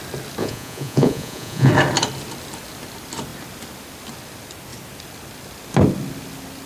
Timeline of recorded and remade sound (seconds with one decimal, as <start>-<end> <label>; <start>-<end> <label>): 0.0-0.4 recorded; 0.4-1.7 remade; 1.7-6.7 recorded